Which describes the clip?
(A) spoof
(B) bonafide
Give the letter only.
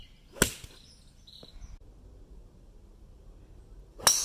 B